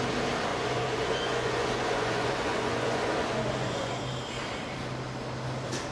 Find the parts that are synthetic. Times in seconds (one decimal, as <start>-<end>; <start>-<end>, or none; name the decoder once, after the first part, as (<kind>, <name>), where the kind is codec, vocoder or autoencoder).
0.5-4.0 (vocoder, Vocos)